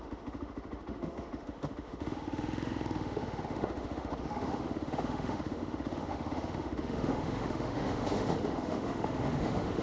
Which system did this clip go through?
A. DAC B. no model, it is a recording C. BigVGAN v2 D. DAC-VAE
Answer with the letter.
D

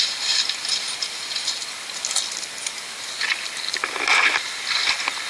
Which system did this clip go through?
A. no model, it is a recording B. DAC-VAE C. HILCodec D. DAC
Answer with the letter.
A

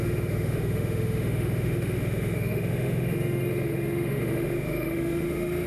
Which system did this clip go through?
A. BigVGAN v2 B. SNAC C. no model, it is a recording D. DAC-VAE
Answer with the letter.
D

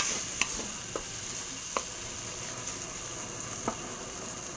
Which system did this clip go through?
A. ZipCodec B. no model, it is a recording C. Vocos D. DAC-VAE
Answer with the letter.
B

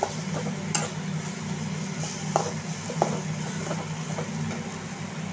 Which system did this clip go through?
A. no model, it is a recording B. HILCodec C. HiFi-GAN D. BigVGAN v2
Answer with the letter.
A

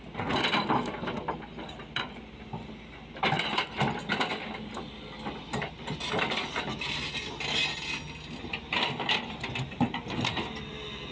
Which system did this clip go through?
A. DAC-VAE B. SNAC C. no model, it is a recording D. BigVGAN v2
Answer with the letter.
C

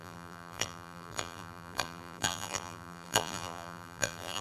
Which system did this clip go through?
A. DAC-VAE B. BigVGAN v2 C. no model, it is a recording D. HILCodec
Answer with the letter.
B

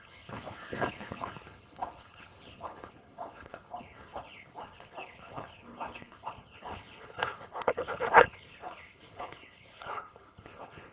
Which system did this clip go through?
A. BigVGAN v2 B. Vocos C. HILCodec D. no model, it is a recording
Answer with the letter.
C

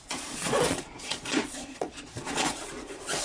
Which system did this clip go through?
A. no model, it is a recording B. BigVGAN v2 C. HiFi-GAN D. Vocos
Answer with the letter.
D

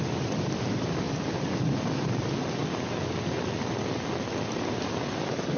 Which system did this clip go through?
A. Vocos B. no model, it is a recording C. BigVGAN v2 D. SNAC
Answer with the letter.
B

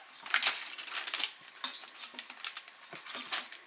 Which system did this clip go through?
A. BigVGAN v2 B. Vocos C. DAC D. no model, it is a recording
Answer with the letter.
D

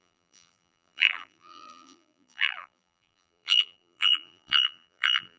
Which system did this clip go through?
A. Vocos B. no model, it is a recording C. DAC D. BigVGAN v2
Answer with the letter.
D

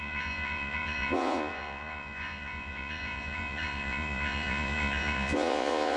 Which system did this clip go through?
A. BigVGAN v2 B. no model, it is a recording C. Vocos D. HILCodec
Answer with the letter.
C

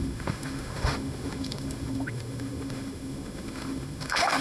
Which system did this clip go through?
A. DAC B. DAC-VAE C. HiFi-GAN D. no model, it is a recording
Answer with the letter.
B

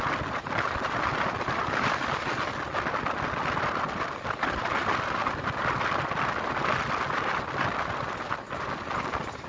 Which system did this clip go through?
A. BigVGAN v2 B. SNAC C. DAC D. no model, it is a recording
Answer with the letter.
D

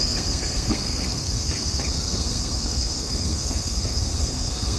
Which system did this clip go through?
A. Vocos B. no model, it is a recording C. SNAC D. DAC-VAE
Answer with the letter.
C